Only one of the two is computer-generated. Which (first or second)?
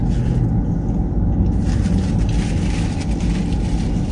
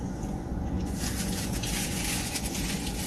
second